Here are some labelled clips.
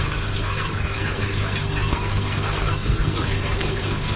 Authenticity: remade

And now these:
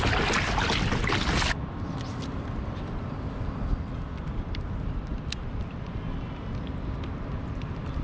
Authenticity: recorded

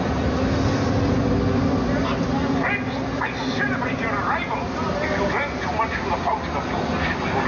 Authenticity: recorded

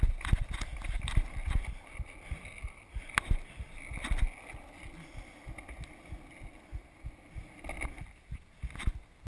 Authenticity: recorded